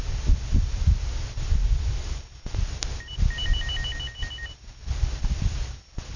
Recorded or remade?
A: recorded